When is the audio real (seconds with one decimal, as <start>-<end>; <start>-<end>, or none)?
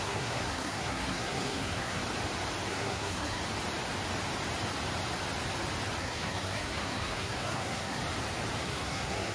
2.0-2.7; 3.4-6.0; 8.0-8.6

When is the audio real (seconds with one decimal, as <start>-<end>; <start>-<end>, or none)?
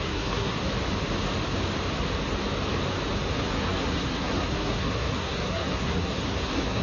0.6-3.3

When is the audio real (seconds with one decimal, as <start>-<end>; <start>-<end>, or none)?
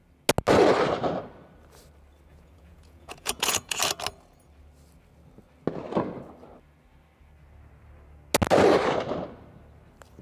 0.0-2.3; 3.8-10.2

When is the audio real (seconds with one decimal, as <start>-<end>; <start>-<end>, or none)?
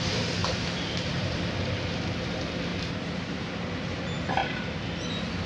0.0-0.4; 1.4-2.7; 3.5-5.5